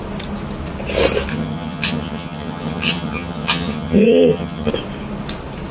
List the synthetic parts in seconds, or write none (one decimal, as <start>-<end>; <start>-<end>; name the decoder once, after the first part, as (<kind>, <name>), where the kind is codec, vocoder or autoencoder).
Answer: 1.3-4.7 (vocoder, HiFi-GAN)